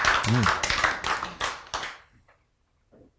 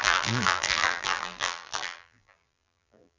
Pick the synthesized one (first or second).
second